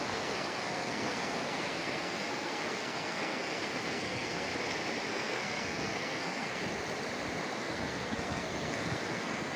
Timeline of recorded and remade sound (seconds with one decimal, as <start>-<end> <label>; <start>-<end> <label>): 0.0-4.5 remade; 4.5-5.1 recorded; 5.1-6.6 remade; 6.6-7.6 recorded; 7.6-9.6 remade